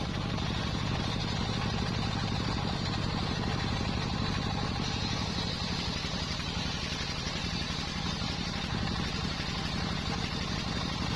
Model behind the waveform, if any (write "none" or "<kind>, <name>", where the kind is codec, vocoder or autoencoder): none